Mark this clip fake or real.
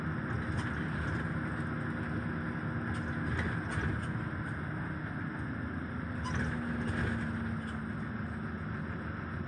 real